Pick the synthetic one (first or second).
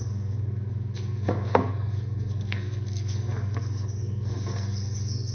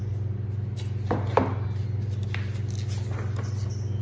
first